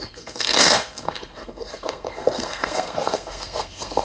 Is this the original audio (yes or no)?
no